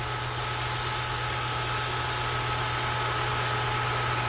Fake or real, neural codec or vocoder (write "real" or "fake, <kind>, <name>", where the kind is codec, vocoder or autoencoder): real